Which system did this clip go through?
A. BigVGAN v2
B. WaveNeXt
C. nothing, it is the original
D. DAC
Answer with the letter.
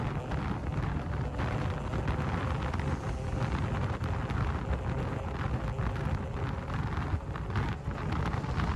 C